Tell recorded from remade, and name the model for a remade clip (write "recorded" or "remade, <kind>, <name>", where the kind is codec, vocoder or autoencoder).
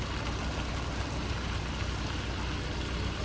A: recorded